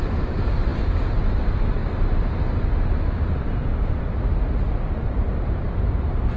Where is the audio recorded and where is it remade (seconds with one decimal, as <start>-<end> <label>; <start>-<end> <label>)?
0.0-1.8 remade; 1.8-3.3 recorded; 3.3-3.7 remade; 3.7-4.7 recorded; 4.7-6.4 remade